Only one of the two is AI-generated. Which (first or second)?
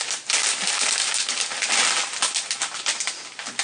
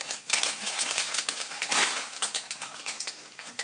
second